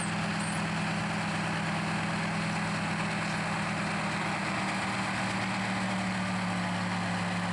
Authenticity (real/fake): real